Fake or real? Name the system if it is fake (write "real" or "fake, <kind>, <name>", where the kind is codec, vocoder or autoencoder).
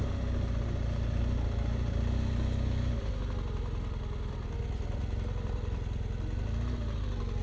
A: real